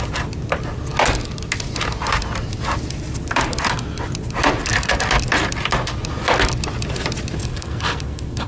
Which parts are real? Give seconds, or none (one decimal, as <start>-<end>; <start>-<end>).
0.0-7.4